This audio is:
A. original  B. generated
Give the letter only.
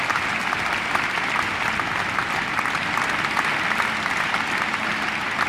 A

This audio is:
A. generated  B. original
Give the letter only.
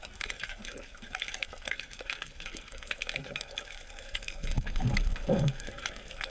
A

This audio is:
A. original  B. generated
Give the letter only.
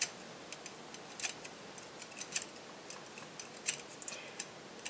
A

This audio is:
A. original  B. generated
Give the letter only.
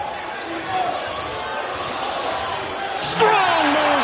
A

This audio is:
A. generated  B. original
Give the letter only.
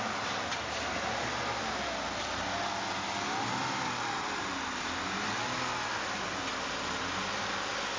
B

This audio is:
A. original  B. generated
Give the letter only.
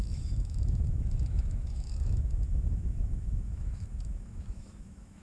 B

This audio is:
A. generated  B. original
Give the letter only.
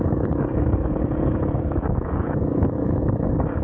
A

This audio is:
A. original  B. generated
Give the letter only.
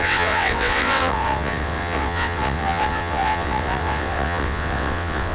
B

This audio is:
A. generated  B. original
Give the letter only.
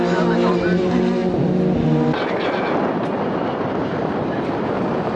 B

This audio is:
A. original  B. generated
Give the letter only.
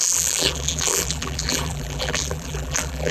B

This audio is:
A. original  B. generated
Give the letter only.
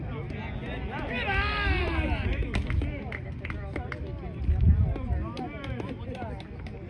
A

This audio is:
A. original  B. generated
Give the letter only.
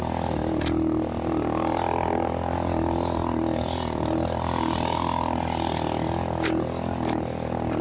A